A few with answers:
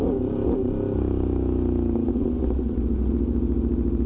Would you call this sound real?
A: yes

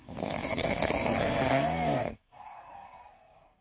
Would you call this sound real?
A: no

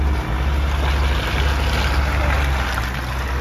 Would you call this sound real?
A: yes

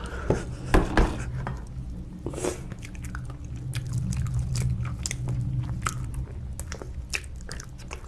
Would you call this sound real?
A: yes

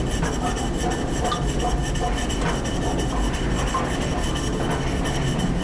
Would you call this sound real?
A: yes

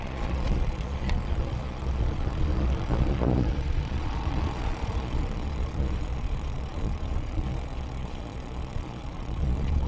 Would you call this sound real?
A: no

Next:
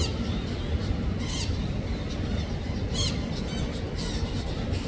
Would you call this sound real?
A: yes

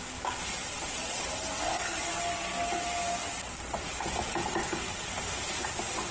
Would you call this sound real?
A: yes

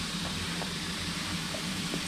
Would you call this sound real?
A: no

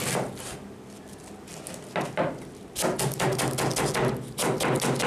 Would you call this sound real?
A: yes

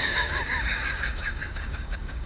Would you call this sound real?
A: no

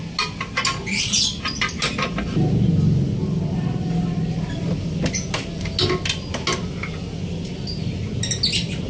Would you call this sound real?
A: yes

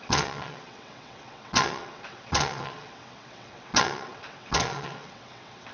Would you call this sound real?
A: no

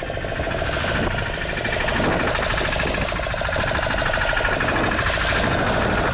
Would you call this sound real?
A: yes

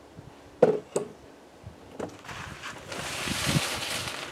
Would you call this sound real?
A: yes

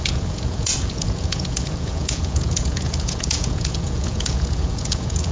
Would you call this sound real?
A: no